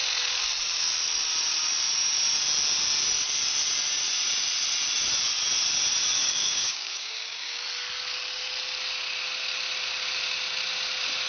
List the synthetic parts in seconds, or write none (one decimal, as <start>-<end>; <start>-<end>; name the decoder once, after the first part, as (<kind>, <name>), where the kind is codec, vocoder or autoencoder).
6.2-7.6 (codec, DAC)